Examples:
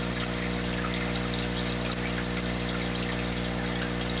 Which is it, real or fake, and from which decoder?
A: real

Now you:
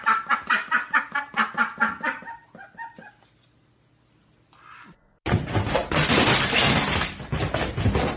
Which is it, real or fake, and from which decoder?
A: real